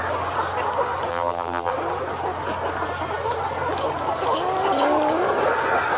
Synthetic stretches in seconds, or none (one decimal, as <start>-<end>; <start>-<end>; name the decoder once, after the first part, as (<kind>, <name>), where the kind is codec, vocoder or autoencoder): 1.1-1.7 (vocoder, BigVGAN v2)